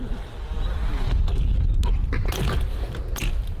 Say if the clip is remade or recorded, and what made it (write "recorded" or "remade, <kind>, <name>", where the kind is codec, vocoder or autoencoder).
recorded